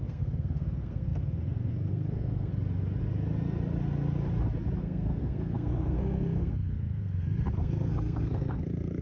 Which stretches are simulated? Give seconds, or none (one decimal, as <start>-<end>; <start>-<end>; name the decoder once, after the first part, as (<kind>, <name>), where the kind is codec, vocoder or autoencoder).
0.0-2.5 (codec, SNAC); 4.8-9.0

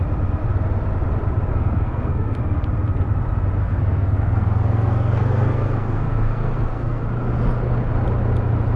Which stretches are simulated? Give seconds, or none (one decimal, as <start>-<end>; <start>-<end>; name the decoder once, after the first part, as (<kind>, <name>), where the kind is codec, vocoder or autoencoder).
1.5-2.4 (codec, SNAC); 3.6-7.0

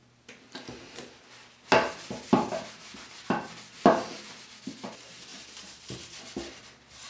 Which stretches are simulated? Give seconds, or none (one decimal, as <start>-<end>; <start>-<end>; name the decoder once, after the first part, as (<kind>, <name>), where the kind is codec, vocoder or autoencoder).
none

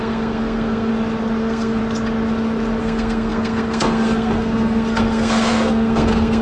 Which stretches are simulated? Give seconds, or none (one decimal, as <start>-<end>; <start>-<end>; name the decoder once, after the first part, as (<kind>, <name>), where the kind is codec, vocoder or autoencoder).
0.0-0.9 (codec, SNAC); 1.4-1.8; 2.8-6.4

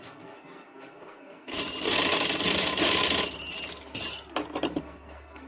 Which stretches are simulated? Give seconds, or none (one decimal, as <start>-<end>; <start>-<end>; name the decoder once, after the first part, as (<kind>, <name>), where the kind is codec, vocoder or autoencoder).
0.0-1.5 (codec, SNAC); 4.8-5.5

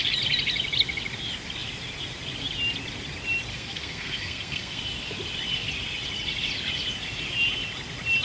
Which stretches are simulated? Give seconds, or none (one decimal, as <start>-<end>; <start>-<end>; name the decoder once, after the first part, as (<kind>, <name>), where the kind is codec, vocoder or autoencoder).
3.5-4.8 (codec, SNAC)

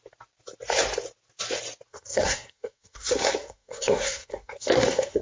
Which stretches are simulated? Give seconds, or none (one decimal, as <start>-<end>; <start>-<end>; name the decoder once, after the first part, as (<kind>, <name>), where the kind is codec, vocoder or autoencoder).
1.9-5.2 (codec, SNAC)

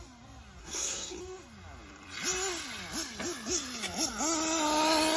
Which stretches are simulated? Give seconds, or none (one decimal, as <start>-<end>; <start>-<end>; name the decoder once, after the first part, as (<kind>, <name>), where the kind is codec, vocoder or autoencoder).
0.6-1.2 (codec, SNAC)